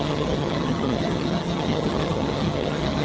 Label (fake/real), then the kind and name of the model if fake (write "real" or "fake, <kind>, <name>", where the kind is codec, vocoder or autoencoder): fake, vocoder, HiFi-GAN